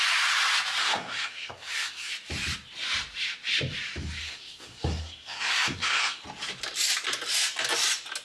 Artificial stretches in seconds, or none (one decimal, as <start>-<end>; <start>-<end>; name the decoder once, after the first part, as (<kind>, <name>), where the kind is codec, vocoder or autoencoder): 0.8-2.1 (codec, SNAC); 4.2-6.2